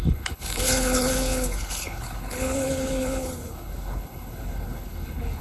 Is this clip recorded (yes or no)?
no